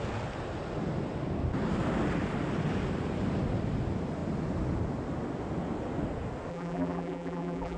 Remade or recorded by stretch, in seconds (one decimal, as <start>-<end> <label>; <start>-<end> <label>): 0.0-6.5 recorded; 6.5-7.8 remade